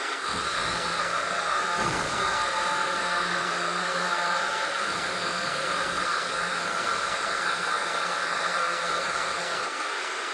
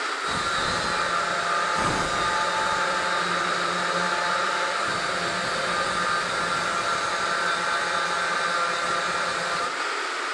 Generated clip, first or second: first